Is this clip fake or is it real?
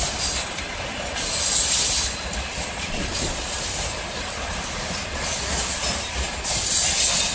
real